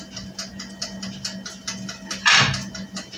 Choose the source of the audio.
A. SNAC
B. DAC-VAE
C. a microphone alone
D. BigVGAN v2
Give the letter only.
C